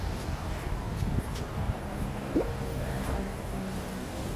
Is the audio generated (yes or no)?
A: yes